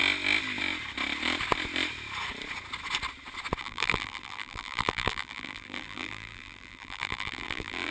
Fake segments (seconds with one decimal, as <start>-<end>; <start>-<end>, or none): 3.6-7.9

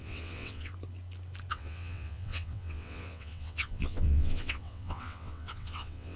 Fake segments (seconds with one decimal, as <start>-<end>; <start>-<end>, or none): 0.0-0.7; 1.5-6.2